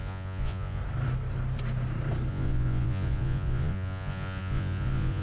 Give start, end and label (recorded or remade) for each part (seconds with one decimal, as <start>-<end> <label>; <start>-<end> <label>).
0.0-0.8 remade; 0.8-2.3 recorded; 2.3-5.2 remade